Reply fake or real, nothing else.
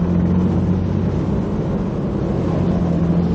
real